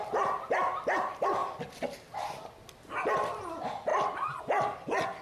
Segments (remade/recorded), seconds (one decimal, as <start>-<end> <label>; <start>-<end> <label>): 0.0-5.2 recorded